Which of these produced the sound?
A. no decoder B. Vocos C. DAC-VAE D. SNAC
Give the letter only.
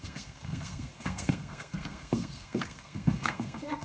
D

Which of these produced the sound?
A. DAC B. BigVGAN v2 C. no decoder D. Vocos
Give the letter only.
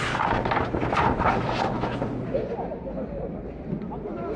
C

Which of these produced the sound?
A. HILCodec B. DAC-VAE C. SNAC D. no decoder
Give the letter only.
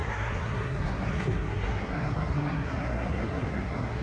C